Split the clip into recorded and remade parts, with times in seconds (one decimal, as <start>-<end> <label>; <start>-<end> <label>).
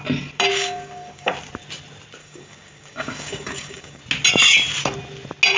0.0-0.5 recorded; 0.5-1.3 remade; 1.3-2.2 recorded; 2.2-4.0 remade; 4.0-5.6 recorded